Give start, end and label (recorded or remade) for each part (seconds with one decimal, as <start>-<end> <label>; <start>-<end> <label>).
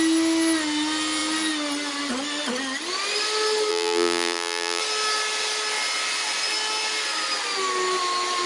0.0-3.7 recorded; 3.7-4.8 remade; 4.8-8.5 recorded